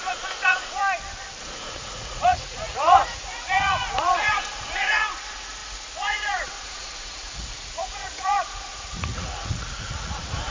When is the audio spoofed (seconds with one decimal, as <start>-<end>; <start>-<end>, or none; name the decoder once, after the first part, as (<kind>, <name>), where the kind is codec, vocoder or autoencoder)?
0.0-0.8 (vocoder, Vocos); 1.4-10.5